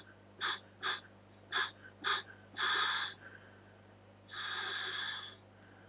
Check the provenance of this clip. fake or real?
real